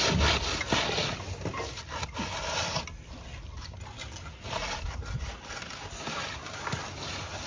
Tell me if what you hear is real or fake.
real